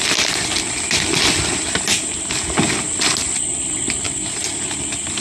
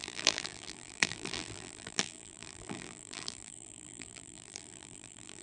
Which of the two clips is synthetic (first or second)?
second